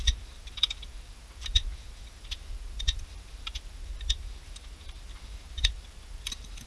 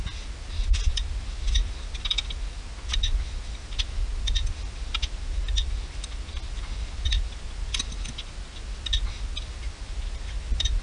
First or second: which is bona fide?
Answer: second